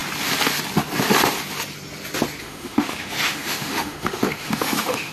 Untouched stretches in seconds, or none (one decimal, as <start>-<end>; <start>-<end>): 0.0-2.4